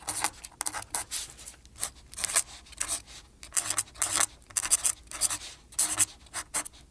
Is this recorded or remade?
recorded